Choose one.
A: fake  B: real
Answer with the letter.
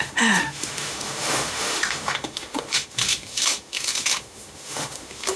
A